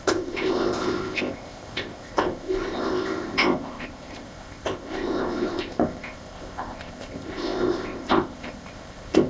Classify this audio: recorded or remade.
remade